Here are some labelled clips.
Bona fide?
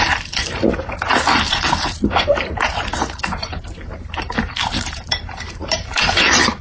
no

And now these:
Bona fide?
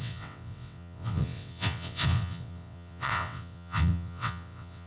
no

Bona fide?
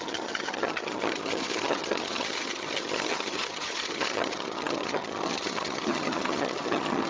no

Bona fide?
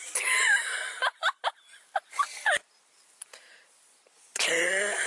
yes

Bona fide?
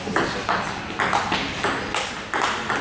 yes